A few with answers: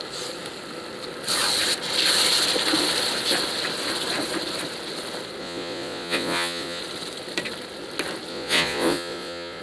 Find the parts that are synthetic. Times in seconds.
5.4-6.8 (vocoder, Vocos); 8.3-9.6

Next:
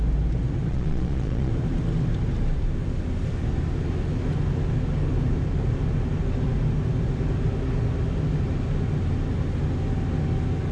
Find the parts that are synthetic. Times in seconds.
0.7-1.5 (vocoder, Vocos)

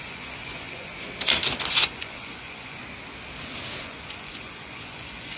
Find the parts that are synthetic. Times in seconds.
0.0-0.9 (vocoder, Vocos); 1.7-2.8; 3.8-5.4

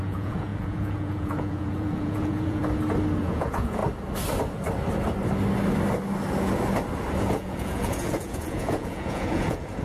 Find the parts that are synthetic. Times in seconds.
0.0-2.6 (vocoder, Vocos); 3.2-3.8; 7.2-9.8

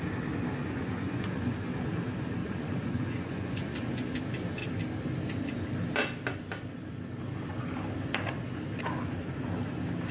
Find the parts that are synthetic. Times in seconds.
0.6-1.5 (vocoder, Vocos); 2.4-4.1

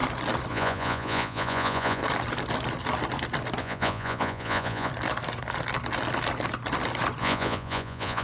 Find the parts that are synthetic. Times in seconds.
0.5-2.0 (vocoder, Vocos); 3.6-4.9; 7.2-8.2

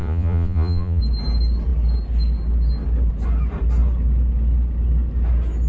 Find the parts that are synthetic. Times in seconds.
0.0-1.0 (vocoder, Vocos)